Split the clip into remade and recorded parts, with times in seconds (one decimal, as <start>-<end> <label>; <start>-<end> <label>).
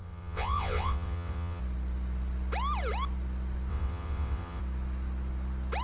0.0-1.6 remade; 1.6-3.7 recorded; 3.7-4.6 remade; 4.6-5.8 recorded